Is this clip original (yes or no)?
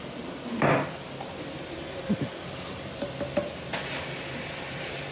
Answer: yes